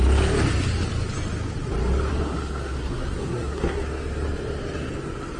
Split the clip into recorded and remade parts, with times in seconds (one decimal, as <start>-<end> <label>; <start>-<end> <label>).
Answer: 0.0-2.1 recorded; 2.1-3.8 remade; 3.8-5.4 recorded